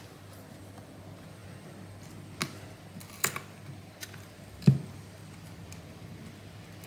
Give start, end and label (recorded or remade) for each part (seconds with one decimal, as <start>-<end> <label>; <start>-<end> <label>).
0.0-6.9 recorded